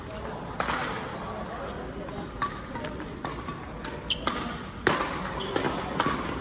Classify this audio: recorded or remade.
recorded